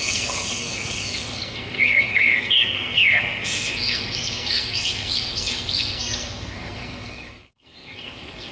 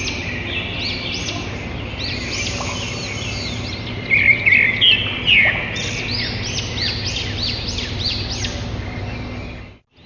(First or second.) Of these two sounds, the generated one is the first